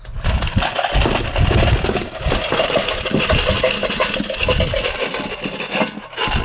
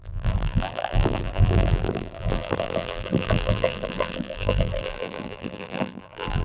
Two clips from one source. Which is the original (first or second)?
first